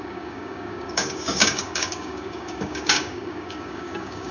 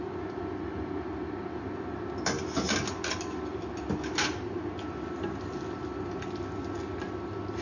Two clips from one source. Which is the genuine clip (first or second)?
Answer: second